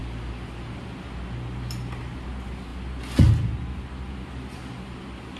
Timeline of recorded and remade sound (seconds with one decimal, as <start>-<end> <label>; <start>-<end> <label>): 0.0-5.4 recorded